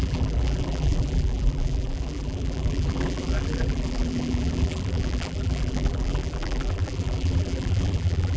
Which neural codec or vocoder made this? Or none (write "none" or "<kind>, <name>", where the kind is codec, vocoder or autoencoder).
vocoder, BigVGAN v2